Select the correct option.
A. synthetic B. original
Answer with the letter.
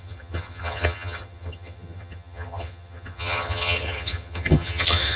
A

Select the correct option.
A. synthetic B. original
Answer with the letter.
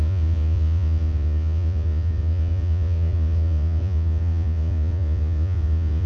A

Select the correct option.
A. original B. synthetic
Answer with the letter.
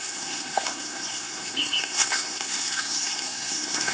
B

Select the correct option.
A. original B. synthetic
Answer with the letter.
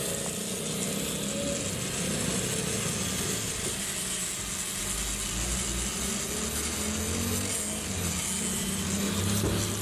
A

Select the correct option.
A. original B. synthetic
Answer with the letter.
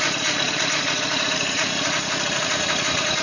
B